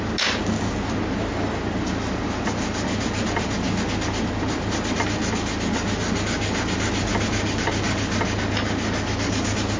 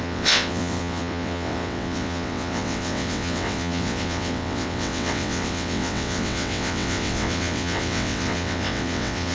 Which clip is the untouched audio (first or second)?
first